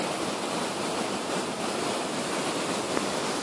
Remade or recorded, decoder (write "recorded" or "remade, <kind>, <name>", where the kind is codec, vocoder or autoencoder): recorded